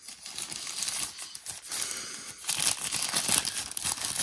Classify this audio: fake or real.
real